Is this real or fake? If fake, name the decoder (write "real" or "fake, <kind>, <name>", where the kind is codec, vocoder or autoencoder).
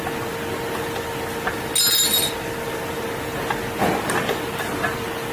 real